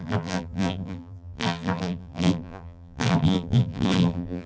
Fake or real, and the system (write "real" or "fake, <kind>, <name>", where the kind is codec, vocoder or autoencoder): fake, vocoder, BigVGAN v2